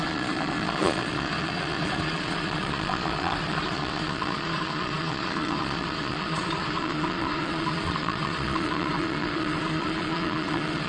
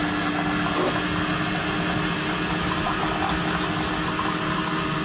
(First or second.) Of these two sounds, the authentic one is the second